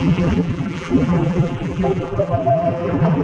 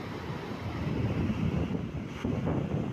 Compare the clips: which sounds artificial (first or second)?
first